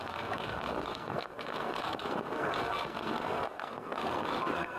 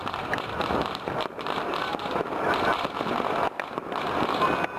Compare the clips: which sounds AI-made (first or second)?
first